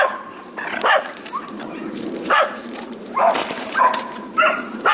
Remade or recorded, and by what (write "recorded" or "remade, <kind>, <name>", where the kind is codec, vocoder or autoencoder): remade, vocoder, BigVGAN v2